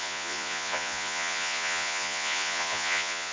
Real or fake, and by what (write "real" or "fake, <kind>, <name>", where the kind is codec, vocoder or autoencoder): fake, vocoder, Vocos